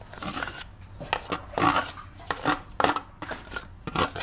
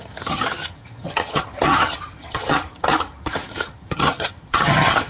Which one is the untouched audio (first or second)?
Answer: first